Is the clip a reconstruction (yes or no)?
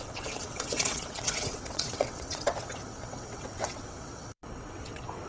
yes